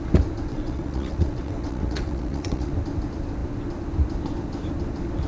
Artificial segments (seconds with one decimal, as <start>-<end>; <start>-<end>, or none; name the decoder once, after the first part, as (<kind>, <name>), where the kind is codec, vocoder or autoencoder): 0.5-2.7 (vocoder, WaveNeXt)